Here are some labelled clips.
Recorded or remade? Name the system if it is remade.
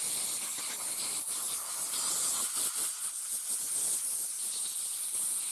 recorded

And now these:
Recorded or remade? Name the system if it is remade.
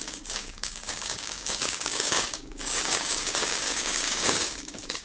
remade, codec, DAC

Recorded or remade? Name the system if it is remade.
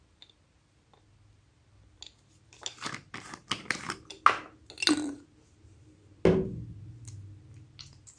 recorded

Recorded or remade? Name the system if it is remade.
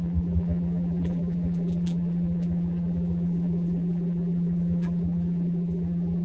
remade, vocoder, BigVGAN v2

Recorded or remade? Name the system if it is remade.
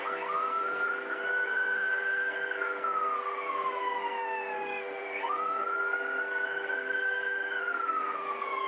remade, codec, SNAC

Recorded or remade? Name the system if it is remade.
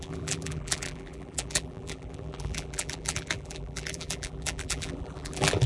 remade, vocoder, BigVGAN v2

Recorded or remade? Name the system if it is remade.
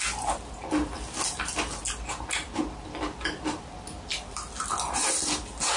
recorded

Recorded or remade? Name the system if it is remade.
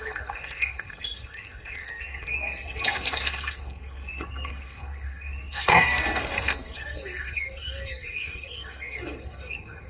remade, codec, SNAC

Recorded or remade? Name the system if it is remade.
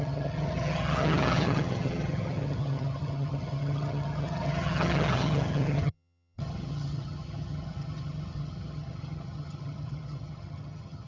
remade, vocoder, HiFi-GAN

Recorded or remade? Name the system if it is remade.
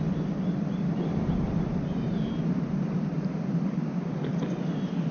remade, vocoder, BigVGAN v2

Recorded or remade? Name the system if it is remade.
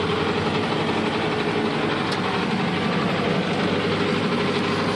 recorded